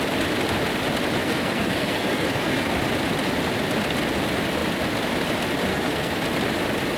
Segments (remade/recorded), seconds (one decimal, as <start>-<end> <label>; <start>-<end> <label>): 0.0-1.2 recorded; 1.2-2.7 remade; 2.7-5.7 recorded; 5.7-6.2 remade; 6.2-7.0 recorded